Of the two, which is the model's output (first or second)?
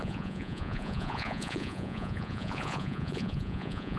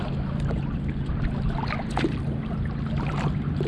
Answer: first